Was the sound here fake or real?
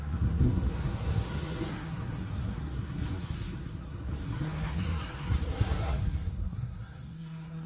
fake